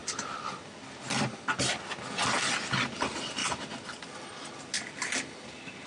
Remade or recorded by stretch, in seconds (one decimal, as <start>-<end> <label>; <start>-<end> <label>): 0.0-5.9 recorded